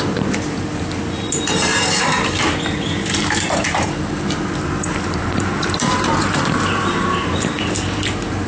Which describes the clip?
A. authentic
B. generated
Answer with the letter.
B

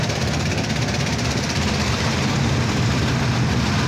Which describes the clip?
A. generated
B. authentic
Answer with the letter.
B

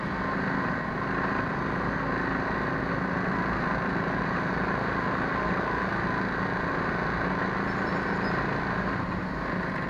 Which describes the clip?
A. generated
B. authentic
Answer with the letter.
B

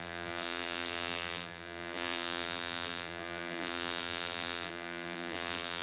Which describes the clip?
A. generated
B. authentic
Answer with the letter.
A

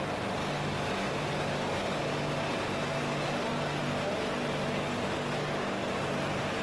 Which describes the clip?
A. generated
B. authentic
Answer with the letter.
B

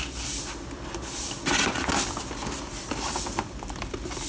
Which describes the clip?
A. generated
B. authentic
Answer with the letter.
B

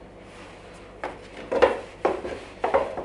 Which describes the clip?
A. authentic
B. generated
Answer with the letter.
A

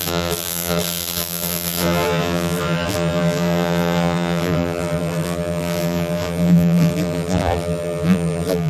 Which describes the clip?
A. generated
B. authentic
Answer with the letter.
A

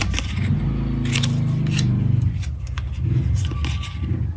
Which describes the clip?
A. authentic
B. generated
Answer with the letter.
A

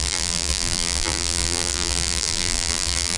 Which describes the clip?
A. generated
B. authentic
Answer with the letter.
A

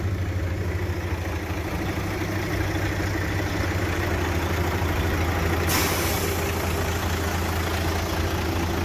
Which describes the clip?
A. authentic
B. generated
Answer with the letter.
A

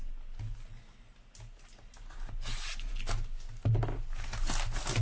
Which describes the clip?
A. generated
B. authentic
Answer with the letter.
B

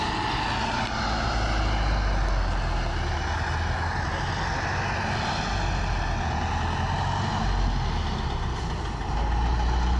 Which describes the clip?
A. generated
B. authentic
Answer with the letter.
B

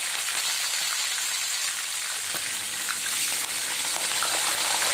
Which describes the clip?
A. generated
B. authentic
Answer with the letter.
B